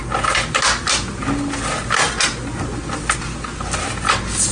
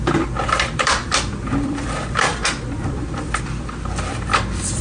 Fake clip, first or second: second